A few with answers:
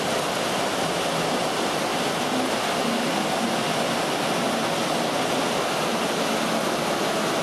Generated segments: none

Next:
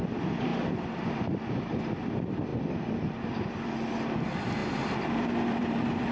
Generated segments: 2.5-3.7 (vocoder, BigVGAN v2); 4.6-6.1

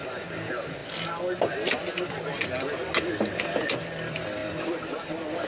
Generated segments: 4.4-5.1 (vocoder, BigVGAN v2)

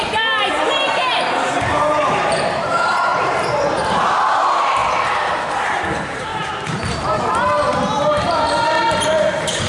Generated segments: 0.0-9.7 (vocoder, BigVGAN v2)

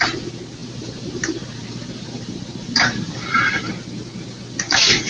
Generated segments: 0.6-3.7 (vocoder, BigVGAN v2)